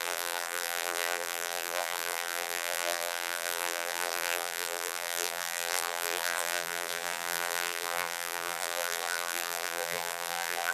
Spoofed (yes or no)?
yes